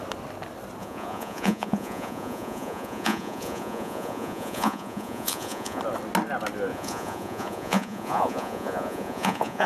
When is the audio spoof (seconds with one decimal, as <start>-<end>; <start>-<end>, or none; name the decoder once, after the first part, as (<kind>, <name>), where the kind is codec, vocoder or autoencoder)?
0.8-5.8 (vocoder, Vocos); 6.7-9.7